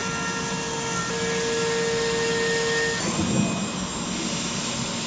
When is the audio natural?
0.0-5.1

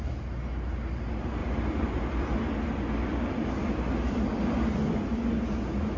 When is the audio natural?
0.0-1.4; 4.5-6.0

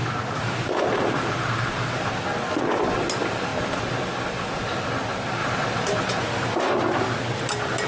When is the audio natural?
2.1-5.4; 6.6-7.9

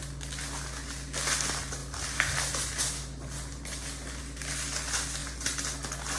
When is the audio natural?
0.0-6.2

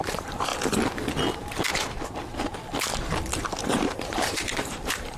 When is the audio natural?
0.5-3.6